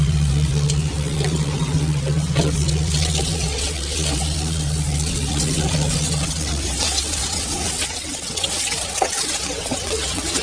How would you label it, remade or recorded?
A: remade